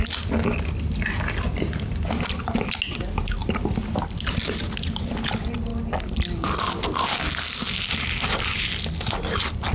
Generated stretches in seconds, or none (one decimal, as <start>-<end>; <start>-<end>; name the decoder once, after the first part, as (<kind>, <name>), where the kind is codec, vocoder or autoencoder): 5.7-7.2 (vocoder, BigVGAN v2)